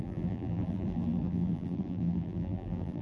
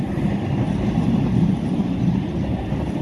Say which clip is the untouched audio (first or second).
second